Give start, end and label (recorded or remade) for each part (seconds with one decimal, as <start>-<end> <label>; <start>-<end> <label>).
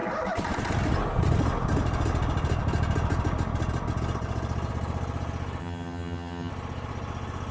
0.0-5.6 recorded; 5.6-6.5 remade; 6.5-7.5 recorded